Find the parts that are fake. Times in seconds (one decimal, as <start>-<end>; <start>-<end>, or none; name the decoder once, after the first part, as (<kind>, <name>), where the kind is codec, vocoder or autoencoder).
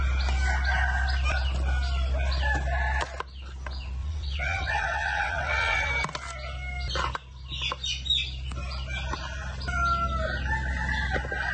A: 4.0-5.9 (vocoder, WaveNeXt)